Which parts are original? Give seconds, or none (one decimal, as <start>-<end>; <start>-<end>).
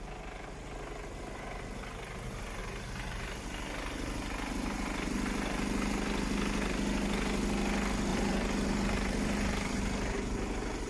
0.0-2.6; 3.4-8.1; 9.8-10.9